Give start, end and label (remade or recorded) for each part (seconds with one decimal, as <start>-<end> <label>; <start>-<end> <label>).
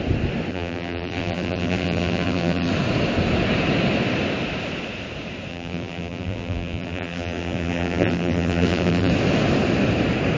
0.0-0.5 recorded; 0.5-2.7 remade; 2.7-5.5 recorded; 5.5-9.1 remade; 9.1-10.4 recorded